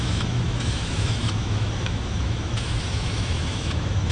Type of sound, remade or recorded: remade